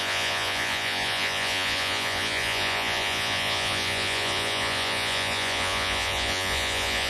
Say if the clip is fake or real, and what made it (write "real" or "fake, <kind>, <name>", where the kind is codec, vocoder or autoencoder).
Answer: fake, vocoder, Vocos